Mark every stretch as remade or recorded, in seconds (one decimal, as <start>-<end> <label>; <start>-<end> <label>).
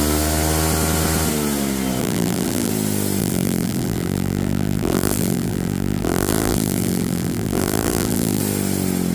0.0-2.0 recorded; 2.0-2.7 remade; 2.7-3.2 recorded; 3.2-8.4 remade; 8.4-9.1 recorded